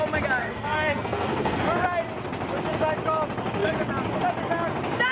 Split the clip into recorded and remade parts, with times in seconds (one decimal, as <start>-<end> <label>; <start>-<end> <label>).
0.0-0.4 recorded; 0.4-1.6 remade; 1.6-5.1 recorded